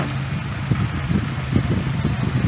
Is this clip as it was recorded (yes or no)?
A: yes